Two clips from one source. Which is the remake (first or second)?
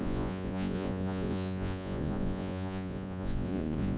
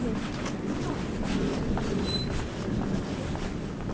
first